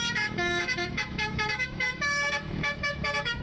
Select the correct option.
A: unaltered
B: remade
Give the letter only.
B